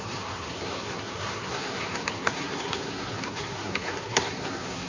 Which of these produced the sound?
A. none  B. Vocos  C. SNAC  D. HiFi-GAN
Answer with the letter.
C